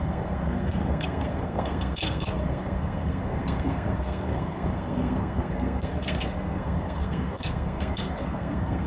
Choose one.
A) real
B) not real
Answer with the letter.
B